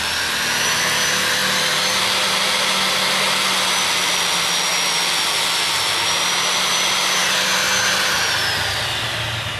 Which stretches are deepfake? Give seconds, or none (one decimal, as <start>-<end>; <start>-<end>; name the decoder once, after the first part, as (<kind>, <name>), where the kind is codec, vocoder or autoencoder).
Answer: none

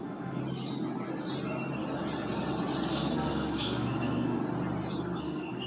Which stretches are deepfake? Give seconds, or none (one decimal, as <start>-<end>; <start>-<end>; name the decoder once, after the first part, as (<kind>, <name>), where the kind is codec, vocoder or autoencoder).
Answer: 0.0-0.4 (codec, SNAC); 2.9-4.4; 5.2-5.7

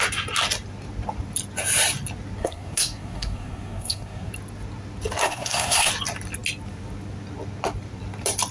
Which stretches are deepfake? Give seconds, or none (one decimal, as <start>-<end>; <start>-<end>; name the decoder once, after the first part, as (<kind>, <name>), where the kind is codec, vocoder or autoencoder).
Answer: 2.4-4.3 (codec, SNAC); 5.2-5.9

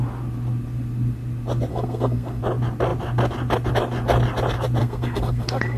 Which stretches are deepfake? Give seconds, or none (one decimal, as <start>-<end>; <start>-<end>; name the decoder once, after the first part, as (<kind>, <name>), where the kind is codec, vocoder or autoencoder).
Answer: 1.7-2.4 (codec, SNAC); 4.8-5.8

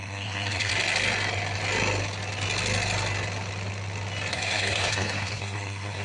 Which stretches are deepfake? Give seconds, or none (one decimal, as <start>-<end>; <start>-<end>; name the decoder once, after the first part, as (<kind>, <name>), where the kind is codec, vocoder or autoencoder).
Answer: 0.0-0.7 (codec, SNAC); 4.3-6.0